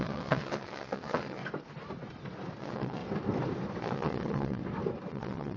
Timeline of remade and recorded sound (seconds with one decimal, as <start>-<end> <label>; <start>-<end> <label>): 0.0-1.4 remade; 1.4-2.6 recorded; 2.6-3.0 remade; 3.0-3.8 recorded; 3.8-4.6 remade; 4.6-5.1 recorded; 5.1-5.6 remade

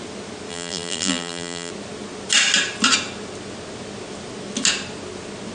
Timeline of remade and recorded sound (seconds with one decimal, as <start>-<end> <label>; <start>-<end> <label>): 0.0-0.5 recorded; 0.5-1.7 remade; 1.7-5.5 recorded

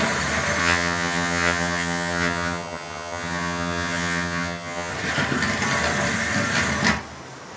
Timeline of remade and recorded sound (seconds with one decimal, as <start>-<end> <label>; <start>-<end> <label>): 0.0-0.6 recorded; 0.6-4.9 remade; 4.9-7.6 recorded

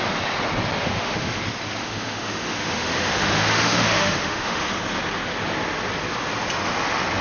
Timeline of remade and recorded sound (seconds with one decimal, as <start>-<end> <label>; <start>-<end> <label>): 0.0-0.8 recorded; 0.8-1.4 remade; 1.4-1.8 recorded; 1.8-4.6 remade; 4.6-7.2 recorded